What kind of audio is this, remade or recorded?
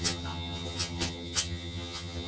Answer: remade